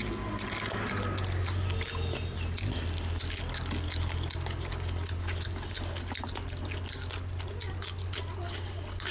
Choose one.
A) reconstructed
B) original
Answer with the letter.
B